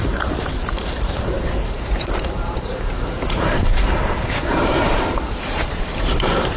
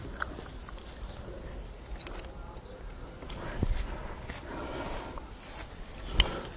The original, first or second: second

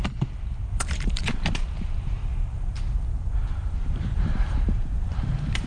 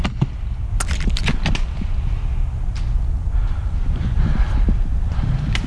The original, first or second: second